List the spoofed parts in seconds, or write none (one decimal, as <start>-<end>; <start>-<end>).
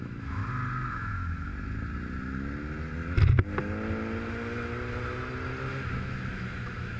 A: 0.0-0.4; 0.9-1.5; 5.7-7.0